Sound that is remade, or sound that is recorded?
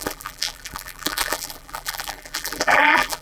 remade